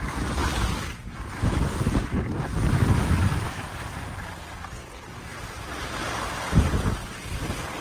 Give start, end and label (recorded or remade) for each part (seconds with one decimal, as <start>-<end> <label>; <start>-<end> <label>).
0.0-7.8 recorded